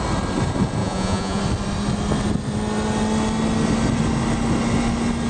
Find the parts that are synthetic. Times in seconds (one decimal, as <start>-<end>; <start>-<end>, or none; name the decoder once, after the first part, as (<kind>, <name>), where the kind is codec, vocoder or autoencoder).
0.8-1.4 (vocoder, Vocos)